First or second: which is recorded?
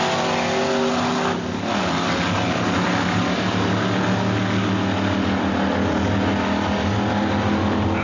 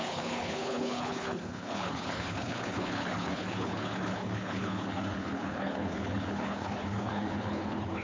first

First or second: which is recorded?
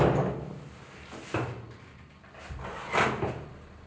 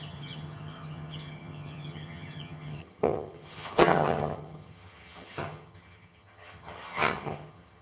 first